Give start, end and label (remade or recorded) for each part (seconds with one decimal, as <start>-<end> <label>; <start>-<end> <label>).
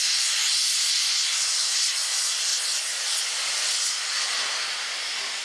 0.0-5.4 recorded